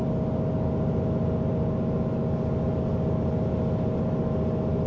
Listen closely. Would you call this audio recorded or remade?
recorded